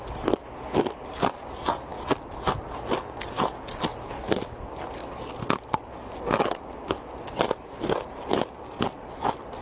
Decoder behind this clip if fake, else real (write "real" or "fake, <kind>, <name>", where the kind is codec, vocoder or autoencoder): real